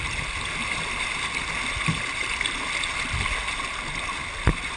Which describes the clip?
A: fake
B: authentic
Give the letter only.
B